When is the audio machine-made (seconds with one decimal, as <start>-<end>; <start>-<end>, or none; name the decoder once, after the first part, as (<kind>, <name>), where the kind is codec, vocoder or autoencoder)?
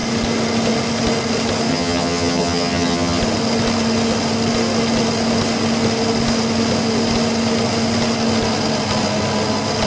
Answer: 1.7-3.2 (vocoder, HiFi-GAN)